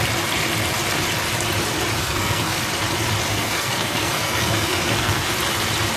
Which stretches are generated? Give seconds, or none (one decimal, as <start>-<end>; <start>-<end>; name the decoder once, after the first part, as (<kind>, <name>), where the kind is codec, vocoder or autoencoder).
2.0-2.6 (codec, SNAC); 3.3-5.3